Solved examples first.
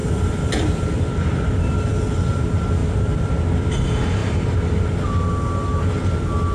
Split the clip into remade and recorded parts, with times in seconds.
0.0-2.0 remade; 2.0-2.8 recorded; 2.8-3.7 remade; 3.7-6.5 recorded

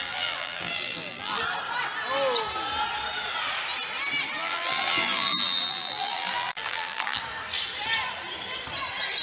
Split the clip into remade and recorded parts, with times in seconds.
0.0-1.4 remade; 1.4-4.4 recorded; 4.4-7.2 remade; 7.2-9.2 recorded

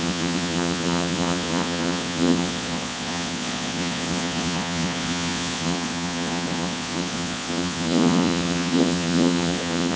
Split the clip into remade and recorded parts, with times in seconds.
0.0-10.0 remade

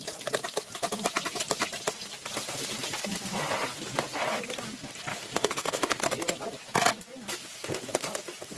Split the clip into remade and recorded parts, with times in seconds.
0.0-5.1 recorded; 5.1-6.0 remade; 6.0-8.6 recorded

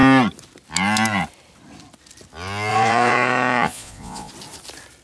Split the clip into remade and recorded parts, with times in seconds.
0.0-2.7 recorded; 2.7-4.3 remade; 4.3-5.0 recorded

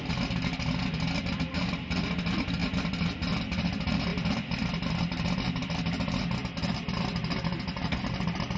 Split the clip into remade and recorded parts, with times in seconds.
0.0-8.6 recorded

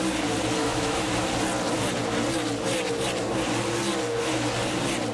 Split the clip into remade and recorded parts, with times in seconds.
0.0-0.6 recorded; 0.6-1.1 remade; 1.1-5.1 recorded

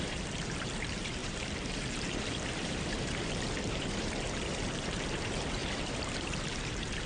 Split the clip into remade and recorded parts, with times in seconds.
0.0-7.1 remade